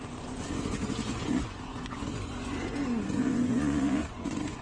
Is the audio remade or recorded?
remade